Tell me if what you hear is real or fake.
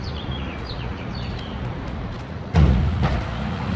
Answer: fake